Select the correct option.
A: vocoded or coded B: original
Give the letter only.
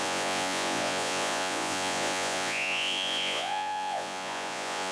A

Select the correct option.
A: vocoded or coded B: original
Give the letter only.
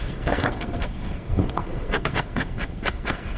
A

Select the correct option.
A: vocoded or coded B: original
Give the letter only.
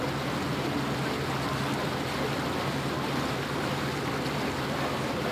B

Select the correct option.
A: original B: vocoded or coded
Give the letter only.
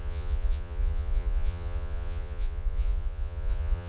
B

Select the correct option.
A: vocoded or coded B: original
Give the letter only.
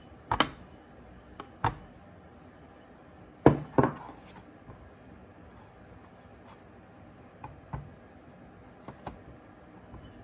B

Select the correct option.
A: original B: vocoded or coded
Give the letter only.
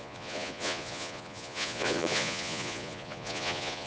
B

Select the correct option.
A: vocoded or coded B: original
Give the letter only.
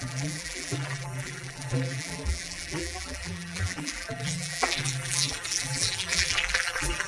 A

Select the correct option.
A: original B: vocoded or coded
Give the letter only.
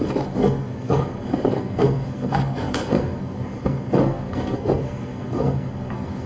B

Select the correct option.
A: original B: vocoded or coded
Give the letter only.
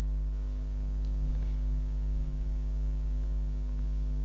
B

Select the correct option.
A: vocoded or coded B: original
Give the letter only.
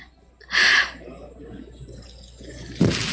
B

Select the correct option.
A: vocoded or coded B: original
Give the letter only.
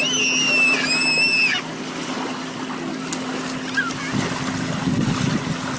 B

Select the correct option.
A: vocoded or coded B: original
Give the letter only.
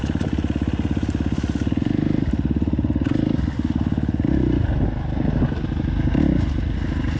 B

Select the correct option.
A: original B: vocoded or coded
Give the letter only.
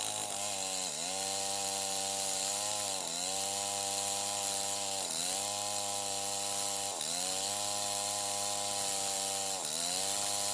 A